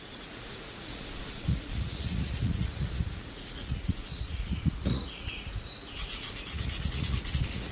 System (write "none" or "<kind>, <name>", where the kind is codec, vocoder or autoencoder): vocoder, Vocos